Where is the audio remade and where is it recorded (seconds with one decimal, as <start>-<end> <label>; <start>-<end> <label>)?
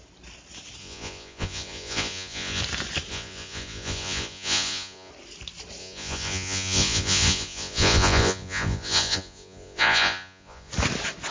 0.0-0.8 recorded; 0.8-2.6 remade; 2.6-3.1 recorded; 3.1-5.1 remade; 5.1-5.8 recorded; 5.8-10.7 remade; 10.7-11.3 recorded